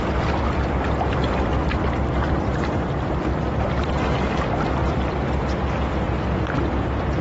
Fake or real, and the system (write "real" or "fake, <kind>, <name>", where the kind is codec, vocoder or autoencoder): real